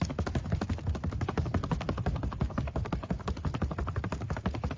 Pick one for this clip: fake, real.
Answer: real